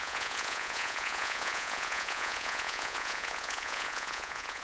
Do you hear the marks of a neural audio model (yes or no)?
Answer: yes